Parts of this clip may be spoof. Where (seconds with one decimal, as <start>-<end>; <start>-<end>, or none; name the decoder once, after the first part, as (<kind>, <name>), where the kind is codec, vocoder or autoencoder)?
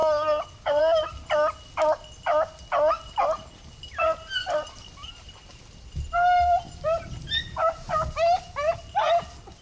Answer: none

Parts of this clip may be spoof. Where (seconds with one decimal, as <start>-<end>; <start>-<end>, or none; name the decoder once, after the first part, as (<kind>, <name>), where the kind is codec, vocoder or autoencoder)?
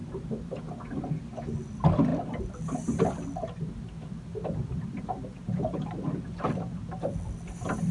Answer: 0.0-0.6 (vocoder, BigVGAN v2); 4.3-6.0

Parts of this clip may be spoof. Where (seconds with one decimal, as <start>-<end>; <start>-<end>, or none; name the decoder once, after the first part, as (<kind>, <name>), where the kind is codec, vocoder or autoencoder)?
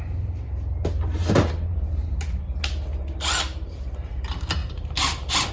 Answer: 1.2-2.1 (vocoder, BigVGAN v2)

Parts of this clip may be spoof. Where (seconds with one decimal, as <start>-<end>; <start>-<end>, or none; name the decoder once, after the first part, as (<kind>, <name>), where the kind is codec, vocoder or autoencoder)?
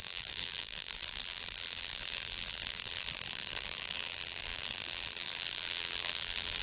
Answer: 0.0-6.6 (vocoder, BigVGAN v2)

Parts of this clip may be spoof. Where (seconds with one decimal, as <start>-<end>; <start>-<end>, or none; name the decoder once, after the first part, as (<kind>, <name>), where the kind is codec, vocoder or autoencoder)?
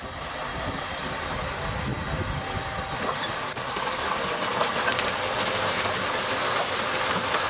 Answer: none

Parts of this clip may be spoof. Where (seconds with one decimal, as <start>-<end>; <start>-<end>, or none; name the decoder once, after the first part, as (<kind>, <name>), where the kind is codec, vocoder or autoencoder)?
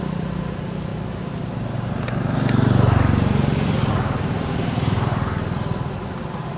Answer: 0.0-0.9 (vocoder, BigVGAN v2); 3.9-6.6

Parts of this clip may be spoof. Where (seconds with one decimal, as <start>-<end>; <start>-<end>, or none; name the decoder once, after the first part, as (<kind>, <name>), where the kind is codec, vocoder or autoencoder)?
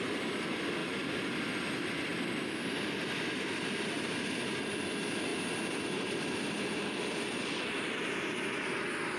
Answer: 0.8-1.4 (vocoder, BigVGAN v2)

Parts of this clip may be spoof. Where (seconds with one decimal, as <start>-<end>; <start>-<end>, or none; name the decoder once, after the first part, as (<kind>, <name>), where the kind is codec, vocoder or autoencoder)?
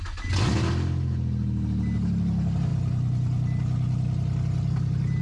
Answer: none